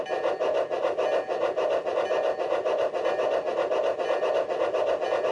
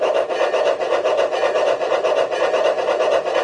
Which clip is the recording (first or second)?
first